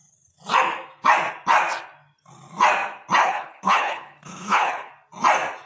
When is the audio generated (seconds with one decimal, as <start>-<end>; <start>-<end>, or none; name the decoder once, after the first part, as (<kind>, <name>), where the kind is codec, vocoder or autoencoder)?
3.2-4.9 (codec, HILCodec)